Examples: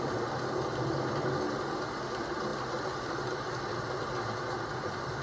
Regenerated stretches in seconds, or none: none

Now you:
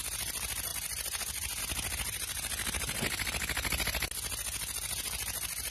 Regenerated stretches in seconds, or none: none

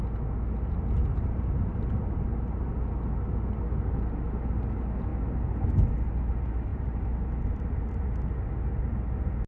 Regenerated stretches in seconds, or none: 1.0-2.2; 6.7-8.1

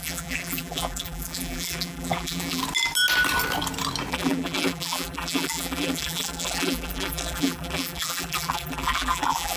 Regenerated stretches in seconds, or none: 0.0-2.6; 4.1-9.6

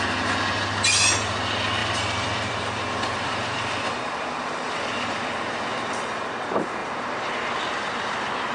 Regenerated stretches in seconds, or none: 1.8-5.7; 6.8-7.3

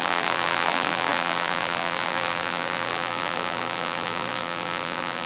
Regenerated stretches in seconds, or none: 0.0-5.3